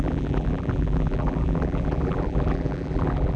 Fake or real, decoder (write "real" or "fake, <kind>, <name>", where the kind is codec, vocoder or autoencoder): fake, vocoder, BigVGAN v2